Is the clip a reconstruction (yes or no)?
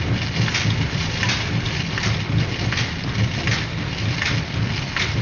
no